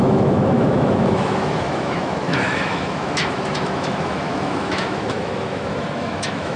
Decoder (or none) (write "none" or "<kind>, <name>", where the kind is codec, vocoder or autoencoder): autoencoder, DAC-VAE